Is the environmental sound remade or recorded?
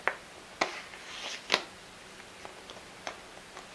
recorded